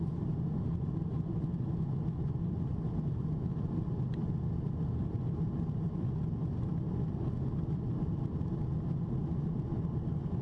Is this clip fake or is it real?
real